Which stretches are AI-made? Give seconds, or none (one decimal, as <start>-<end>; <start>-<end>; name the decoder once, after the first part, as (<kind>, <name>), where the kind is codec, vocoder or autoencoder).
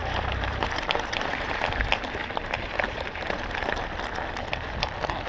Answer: 0.0-1.5 (vocoder, BigVGAN v2); 2.2-3.8